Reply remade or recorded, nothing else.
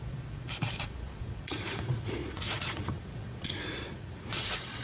remade